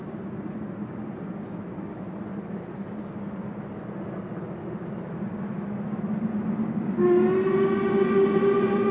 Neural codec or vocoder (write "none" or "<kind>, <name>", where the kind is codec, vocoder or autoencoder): none